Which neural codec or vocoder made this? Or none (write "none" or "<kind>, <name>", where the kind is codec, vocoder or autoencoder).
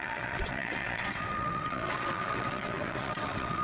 vocoder, WaveNeXt